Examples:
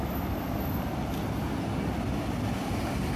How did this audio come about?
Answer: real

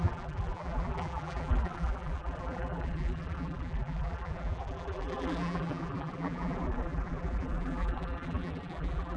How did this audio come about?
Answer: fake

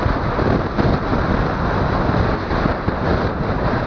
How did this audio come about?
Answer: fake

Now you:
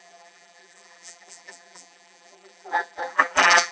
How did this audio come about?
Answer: fake